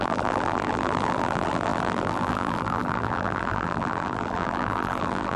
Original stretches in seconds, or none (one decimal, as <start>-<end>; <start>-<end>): none